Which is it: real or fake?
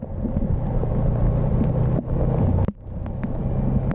real